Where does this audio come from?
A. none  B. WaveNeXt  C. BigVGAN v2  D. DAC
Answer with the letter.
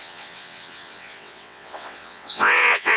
B